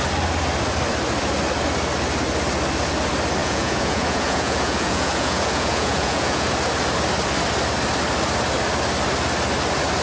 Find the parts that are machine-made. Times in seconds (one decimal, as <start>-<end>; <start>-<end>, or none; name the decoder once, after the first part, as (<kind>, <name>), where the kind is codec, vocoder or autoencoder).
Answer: 3.4-6.5 (vocoder, Vocos)

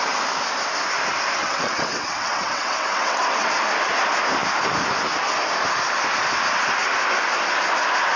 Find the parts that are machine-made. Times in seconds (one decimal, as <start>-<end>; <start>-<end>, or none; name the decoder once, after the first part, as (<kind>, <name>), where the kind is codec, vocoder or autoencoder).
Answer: 1.4-3.5 (vocoder, WaveNeXt)

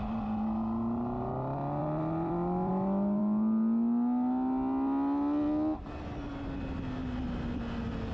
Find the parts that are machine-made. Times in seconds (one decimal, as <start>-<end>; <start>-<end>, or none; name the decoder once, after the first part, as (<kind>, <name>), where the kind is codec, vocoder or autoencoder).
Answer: 1.8-2.7 (vocoder, BigVGAN v2)

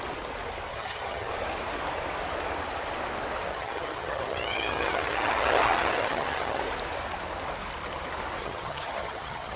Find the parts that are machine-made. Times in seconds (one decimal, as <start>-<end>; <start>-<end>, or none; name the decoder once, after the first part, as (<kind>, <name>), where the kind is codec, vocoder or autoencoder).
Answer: 0.7-1.3 (vocoder, HiFi-GAN); 3.5-6.6; 8.4-9.6

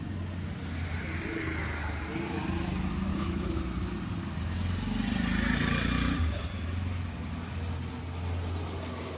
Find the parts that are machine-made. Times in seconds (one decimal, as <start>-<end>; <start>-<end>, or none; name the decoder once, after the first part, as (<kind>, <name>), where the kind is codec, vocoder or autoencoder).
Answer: 3.1-3.6 (codec, HILCodec)

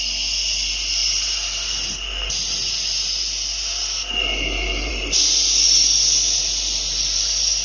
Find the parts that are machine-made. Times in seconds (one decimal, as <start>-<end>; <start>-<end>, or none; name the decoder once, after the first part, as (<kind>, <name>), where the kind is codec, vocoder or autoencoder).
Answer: none

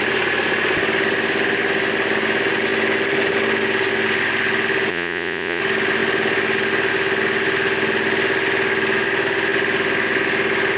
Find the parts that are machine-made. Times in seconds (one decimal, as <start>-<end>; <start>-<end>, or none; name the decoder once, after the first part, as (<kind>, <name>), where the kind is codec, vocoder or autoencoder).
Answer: 4.9-5.6 (vocoder, Vocos)